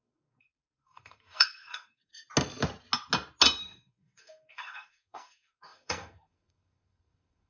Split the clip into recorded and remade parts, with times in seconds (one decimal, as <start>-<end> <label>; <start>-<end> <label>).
0.0-2.1 remade; 2.1-3.6 recorded; 3.6-7.5 remade